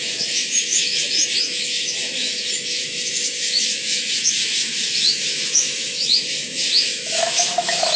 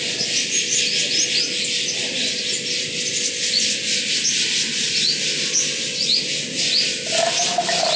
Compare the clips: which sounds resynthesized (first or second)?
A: first